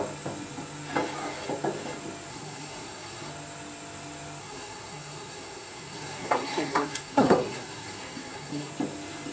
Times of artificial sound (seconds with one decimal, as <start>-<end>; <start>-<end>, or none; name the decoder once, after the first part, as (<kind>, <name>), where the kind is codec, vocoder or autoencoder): 2.3-3.3 (codec, SNAC); 4.4-8.7